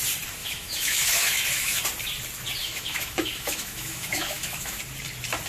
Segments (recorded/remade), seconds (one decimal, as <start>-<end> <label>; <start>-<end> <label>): 0.0-0.4 recorded; 0.4-1.8 remade; 1.8-2.6 recorded; 2.6-4.8 remade; 4.8-5.5 recorded